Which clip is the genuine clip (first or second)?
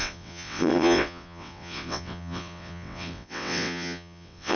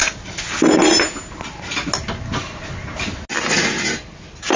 second